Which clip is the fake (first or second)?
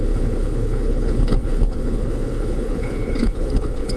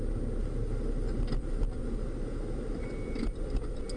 first